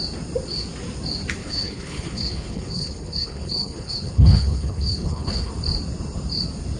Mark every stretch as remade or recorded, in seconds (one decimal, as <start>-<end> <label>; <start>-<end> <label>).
0.0-1.4 recorded; 1.4-5.5 remade; 5.5-6.8 recorded